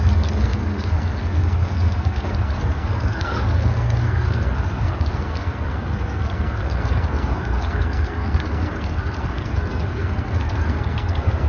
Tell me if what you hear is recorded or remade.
remade